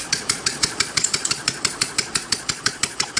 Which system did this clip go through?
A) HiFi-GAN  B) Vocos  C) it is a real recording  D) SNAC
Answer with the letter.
B